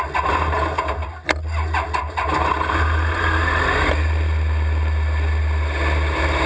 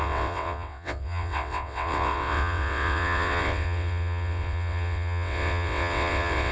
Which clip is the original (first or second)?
first